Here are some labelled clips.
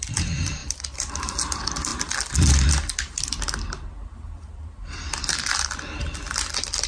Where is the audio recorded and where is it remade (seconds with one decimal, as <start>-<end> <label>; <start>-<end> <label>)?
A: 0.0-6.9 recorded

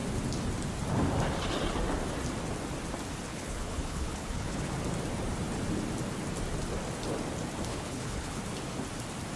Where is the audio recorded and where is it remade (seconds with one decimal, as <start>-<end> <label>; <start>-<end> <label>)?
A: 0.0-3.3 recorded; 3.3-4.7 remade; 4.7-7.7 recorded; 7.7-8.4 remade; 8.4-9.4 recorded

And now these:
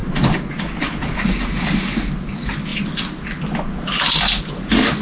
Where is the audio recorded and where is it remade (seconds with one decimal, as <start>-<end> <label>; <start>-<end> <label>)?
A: 0.0-5.0 recorded

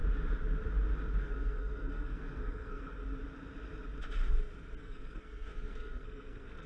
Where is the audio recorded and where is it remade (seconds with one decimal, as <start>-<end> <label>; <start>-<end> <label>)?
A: 0.0-1.2 recorded; 1.2-3.0 remade; 3.0-4.8 recorded; 4.8-6.7 remade